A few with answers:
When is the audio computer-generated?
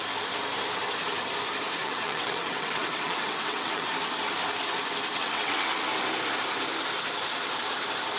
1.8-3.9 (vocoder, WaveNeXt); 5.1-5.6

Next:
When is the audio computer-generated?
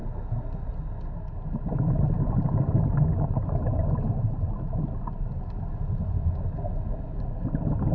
none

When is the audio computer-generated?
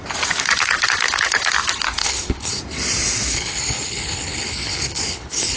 2.0-2.6 (codec, HILCodec); 3.3-5.6